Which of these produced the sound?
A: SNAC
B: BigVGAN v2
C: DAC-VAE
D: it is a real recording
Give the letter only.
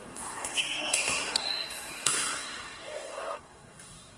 A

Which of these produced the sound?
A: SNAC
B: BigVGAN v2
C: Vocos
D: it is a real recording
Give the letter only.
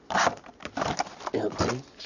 D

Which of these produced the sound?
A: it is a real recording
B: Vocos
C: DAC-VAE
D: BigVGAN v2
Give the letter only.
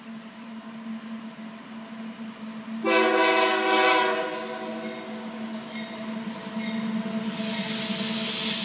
A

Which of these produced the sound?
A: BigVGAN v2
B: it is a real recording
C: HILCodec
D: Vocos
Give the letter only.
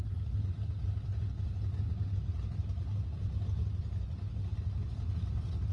B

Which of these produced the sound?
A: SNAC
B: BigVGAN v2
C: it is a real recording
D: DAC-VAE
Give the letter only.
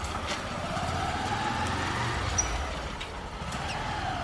C